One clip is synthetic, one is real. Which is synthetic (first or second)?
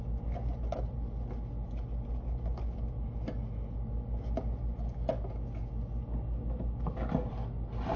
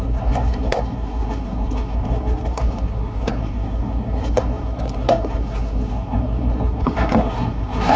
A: second